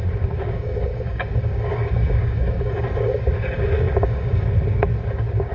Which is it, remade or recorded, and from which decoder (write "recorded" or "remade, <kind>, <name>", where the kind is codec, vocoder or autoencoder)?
remade, codec, DAC